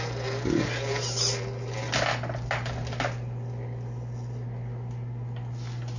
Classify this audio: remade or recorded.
recorded